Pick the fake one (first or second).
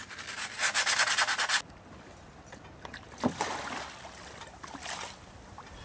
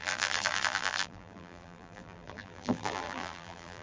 second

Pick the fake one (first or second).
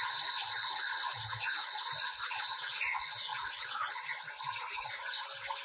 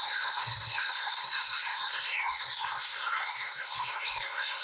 second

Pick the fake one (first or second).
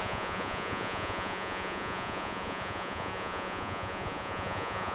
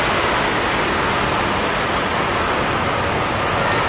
first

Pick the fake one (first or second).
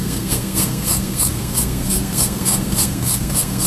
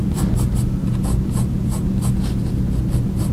first